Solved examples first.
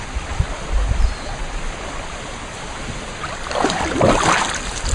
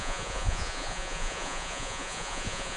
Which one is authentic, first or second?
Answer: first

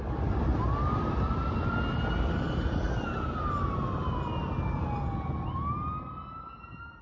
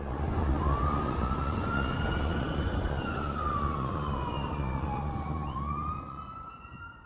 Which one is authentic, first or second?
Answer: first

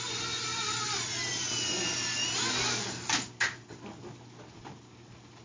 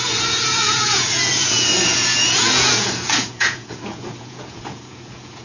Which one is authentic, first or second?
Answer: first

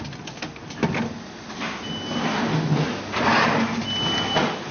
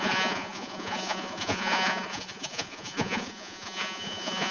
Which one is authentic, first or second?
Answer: first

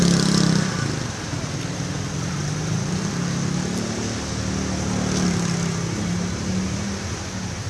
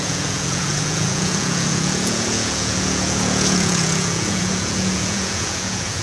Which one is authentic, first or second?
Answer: first